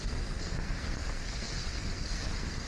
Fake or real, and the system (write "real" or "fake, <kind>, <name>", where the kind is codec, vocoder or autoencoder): fake, codec, SNAC